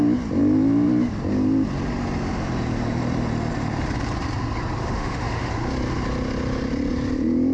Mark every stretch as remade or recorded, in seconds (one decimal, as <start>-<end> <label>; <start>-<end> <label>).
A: 0.0-4.8 recorded; 4.8-5.5 remade; 5.5-7.5 recorded